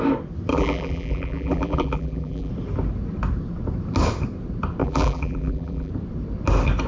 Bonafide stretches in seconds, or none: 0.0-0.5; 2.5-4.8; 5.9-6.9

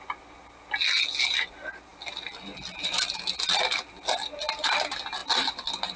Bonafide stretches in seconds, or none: 0.0-6.0